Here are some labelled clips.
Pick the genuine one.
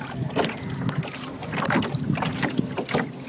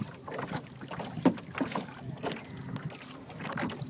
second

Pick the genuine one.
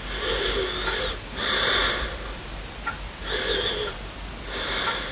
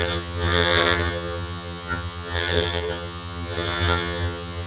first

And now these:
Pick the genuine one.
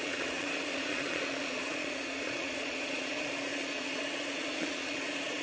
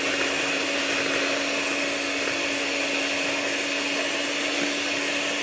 second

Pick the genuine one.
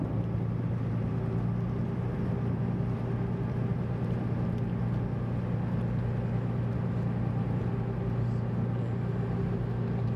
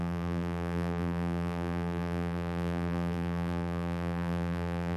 first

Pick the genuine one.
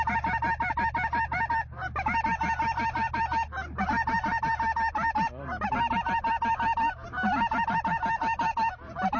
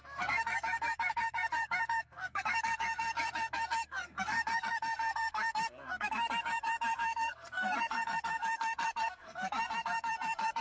first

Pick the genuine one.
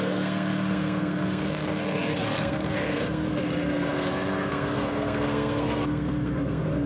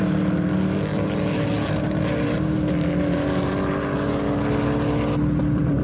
second